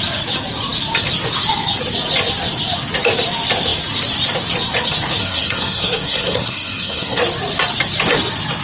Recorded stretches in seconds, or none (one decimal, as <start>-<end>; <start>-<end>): 0.0-5.2; 7.2-8.6

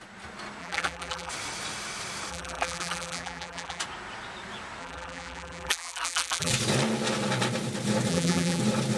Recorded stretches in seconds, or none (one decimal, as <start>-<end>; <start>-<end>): 0.0-0.6; 1.3-2.3; 3.8-4.8; 6.5-8.1; 8.6-9.0

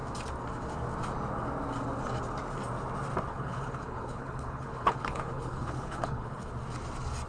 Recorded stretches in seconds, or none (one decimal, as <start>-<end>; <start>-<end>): 0.0-3.3; 6.5-7.3

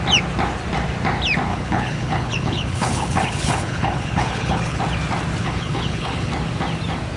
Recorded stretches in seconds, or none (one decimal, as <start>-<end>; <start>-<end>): 0.0-1.5; 4.8-5.4; 6.3-7.2

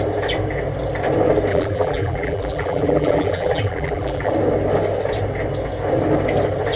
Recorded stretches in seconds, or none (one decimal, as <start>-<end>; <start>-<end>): 0.0-1.5; 4.3-6.8

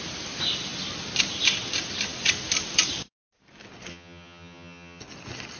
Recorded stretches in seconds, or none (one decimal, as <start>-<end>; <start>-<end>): 0.0-3.9; 5.0-5.6

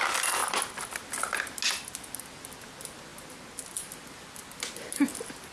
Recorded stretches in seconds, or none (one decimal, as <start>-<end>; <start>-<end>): 0.0-5.5